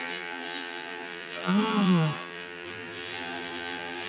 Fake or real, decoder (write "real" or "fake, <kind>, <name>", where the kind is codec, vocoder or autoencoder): fake, vocoder, BigVGAN v2